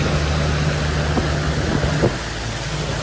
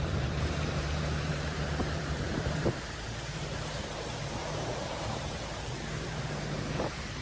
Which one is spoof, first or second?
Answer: second